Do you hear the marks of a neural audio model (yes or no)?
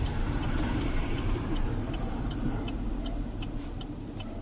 yes